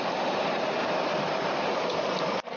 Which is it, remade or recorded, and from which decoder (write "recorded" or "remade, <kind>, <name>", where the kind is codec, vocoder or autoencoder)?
remade, vocoder, BigVGAN v2